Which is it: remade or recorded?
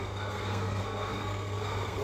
remade